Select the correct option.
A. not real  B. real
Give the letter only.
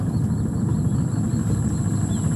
B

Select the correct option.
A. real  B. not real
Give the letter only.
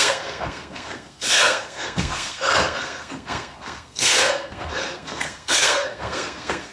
B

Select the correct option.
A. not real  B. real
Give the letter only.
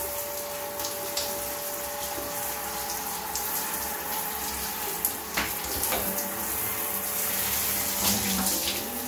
B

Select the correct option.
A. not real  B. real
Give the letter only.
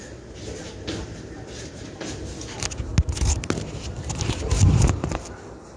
B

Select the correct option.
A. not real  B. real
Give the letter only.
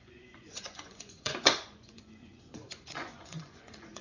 A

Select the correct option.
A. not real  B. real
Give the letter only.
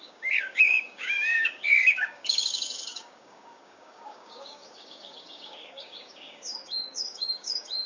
A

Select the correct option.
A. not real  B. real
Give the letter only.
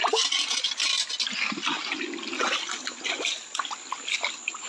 B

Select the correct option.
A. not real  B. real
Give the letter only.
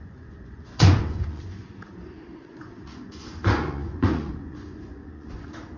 A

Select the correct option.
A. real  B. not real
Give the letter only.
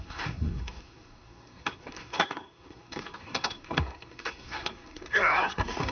B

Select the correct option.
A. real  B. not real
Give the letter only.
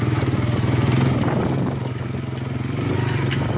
A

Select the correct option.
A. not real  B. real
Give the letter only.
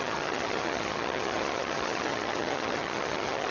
A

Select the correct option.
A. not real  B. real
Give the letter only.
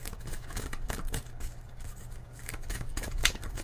A